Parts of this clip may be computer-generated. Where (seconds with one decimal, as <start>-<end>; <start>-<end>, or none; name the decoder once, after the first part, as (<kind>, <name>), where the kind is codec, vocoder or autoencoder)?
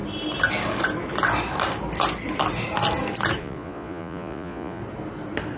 3.4-4.8 (vocoder, Vocos)